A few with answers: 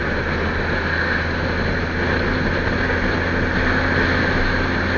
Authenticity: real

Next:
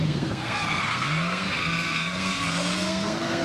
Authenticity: fake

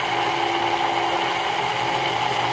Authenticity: real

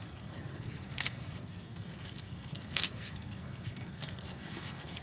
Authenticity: fake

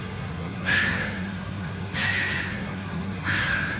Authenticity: fake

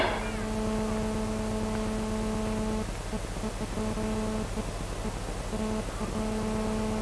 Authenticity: real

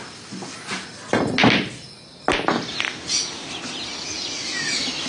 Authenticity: real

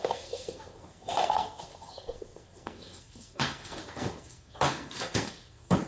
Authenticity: fake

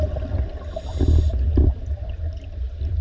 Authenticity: real